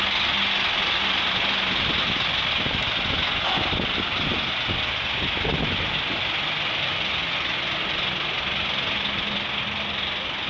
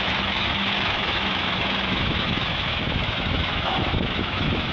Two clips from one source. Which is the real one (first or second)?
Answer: first